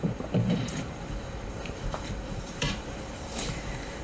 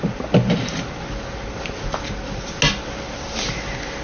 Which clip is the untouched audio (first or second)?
second